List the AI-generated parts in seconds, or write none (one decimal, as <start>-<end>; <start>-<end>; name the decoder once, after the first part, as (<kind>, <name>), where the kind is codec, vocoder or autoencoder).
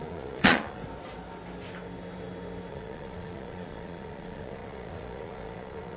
0.0-0.8 (vocoder, Vocos); 2.7-6.0